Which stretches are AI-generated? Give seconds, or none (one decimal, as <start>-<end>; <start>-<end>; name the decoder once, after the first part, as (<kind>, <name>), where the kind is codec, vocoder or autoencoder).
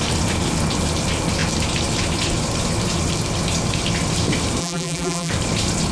4.6-5.3 (vocoder, BigVGAN v2)